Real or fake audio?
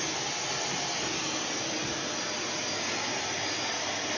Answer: real